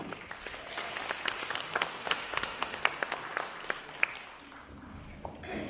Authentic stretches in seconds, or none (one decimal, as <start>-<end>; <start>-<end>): 0.0-2.0; 2.8-5.7